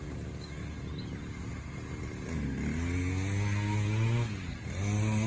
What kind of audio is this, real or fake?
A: real